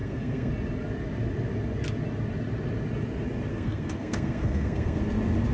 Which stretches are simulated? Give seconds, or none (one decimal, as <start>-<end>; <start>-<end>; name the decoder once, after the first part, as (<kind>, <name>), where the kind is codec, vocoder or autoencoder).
0.0-0.5 (codec, SNAC); 3.5-5.0

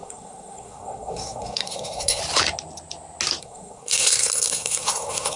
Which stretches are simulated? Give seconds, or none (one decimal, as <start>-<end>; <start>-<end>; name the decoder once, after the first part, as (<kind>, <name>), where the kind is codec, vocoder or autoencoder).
0.0-2.2 (codec, SNAC); 3.4-5.4

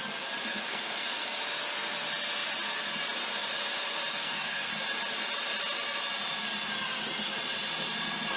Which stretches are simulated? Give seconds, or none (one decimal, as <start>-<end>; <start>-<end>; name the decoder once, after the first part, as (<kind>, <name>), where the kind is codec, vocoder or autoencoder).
0.5-1.4 (codec, SNAC); 4.2-4.7

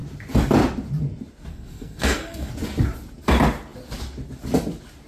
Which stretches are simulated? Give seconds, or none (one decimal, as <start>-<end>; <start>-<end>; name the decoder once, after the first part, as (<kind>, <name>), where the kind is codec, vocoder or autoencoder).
1.5-2.5 (codec, SNAC)

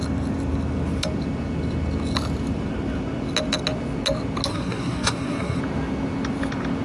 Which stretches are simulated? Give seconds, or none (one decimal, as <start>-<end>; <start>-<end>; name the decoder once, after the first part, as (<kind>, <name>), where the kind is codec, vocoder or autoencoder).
4.5-5.6 (codec, SNAC)

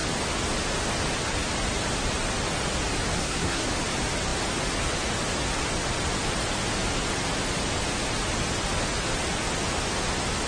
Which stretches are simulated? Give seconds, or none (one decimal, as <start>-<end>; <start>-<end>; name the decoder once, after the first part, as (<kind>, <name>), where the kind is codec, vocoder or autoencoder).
3.2-3.7 (codec, SNAC)

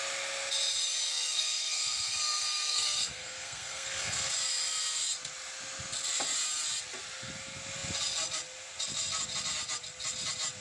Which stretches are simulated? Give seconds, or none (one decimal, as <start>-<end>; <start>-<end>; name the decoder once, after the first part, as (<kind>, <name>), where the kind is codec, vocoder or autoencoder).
1.1-4.3 (codec, SNAC)

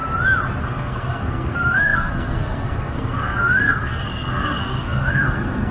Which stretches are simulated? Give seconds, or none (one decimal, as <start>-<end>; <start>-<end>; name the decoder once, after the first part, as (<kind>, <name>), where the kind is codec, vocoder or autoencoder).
0.6-5.7 (codec, SNAC)